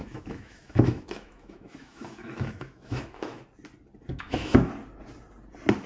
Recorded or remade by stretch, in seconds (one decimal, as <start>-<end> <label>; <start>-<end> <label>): 0.0-3.5 remade; 3.5-4.1 recorded; 4.1-4.7 remade; 4.7-5.9 recorded